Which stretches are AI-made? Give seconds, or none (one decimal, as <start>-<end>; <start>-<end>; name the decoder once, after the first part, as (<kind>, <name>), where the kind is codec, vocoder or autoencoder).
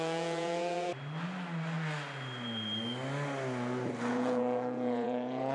0.0-0.9 (vocoder, Vocos); 4.1-5.5